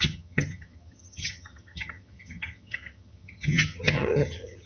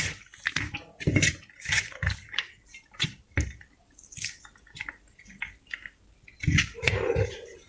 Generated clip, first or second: first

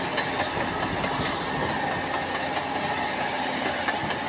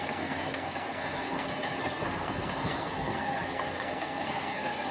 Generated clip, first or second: second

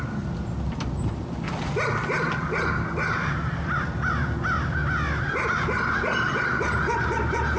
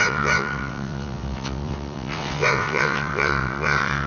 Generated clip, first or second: second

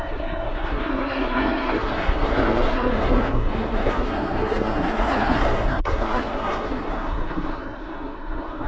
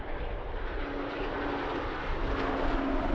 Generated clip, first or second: first